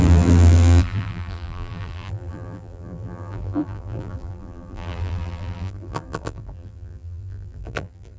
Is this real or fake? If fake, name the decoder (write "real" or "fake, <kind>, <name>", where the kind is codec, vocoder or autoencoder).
fake, vocoder, BigVGAN v2